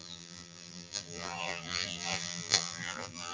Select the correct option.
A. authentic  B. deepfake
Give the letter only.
B